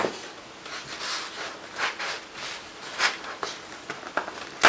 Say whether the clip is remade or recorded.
recorded